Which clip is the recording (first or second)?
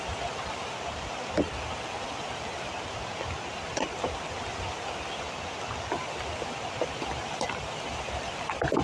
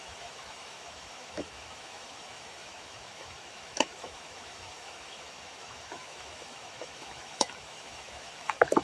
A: first